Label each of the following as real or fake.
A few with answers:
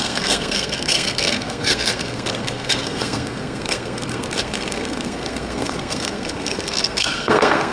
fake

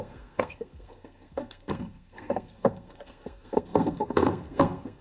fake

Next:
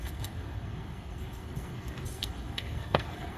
fake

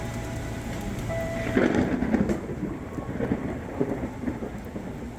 real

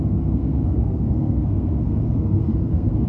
fake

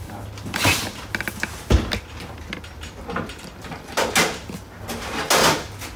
real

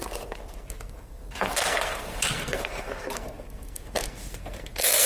fake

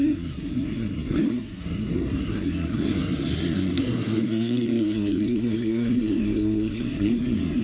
fake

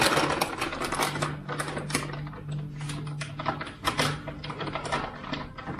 real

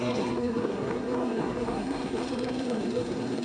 fake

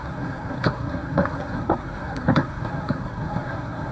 fake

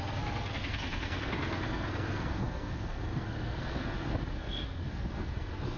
fake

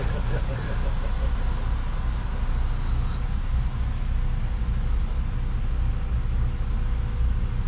real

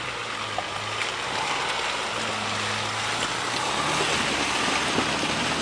real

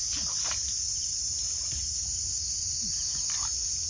real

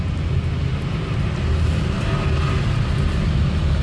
real